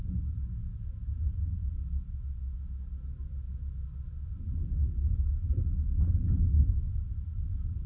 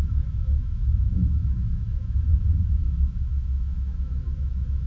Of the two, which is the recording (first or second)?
first